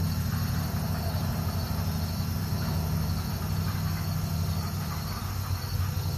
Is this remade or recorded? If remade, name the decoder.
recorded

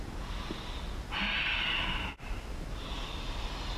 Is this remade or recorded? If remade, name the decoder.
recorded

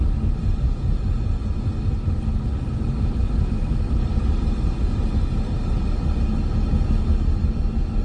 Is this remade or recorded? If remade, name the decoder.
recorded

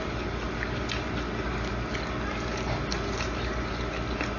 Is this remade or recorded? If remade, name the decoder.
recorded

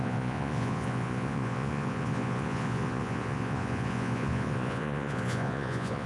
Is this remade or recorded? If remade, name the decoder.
remade, vocoder, Vocos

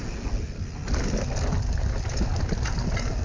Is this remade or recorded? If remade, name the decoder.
recorded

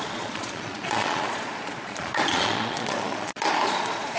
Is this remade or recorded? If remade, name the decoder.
remade, vocoder, Vocos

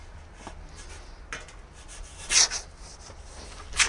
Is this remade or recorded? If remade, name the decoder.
recorded